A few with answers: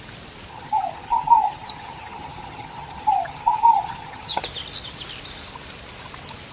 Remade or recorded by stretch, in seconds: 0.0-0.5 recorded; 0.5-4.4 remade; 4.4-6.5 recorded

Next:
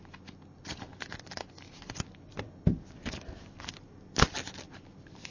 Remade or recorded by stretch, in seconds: 0.0-5.3 recorded

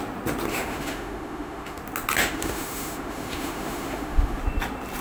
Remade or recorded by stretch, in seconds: 0.0-0.5 recorded; 0.5-1.8 remade; 1.8-2.2 recorded; 2.2-4.4 remade; 4.4-5.0 recorded

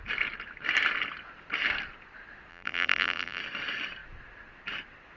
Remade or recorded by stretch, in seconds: 0.0-2.5 recorded; 2.5-3.4 remade; 3.4-5.2 recorded

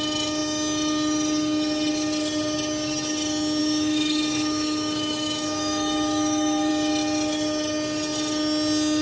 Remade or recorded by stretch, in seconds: 0.0-3.6 recorded; 3.6-6.7 remade; 6.7-9.0 recorded

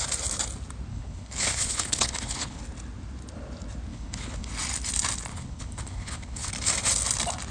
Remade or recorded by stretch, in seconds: 0.0-0.9 recorded; 0.9-2.6 remade; 2.6-3.9 recorded; 3.9-4.5 remade; 4.5-5.3 recorded; 5.3-6.5 remade; 6.5-7.5 recorded